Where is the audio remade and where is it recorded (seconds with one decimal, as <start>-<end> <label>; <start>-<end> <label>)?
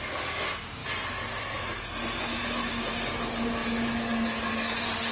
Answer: 0.0-5.1 recorded